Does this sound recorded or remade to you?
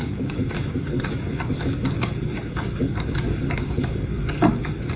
remade